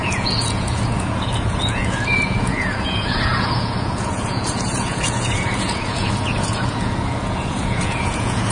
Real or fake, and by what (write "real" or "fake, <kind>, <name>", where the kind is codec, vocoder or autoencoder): fake, vocoder, Vocos